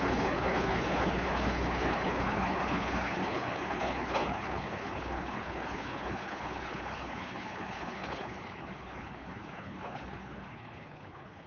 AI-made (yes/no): yes